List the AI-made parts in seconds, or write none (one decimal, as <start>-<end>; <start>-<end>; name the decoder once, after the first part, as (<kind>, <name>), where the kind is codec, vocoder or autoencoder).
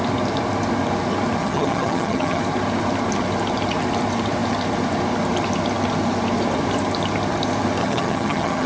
1.4-2.4 (vocoder, HiFi-GAN); 7.8-8.7